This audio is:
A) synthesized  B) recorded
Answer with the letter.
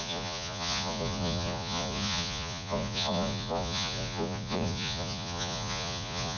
A